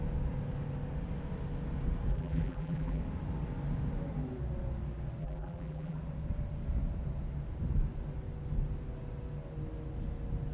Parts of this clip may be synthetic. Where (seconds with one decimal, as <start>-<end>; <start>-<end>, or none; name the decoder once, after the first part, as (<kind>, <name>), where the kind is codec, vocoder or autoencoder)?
2.1-3.0 (vocoder, BigVGAN v2); 5.2-6.0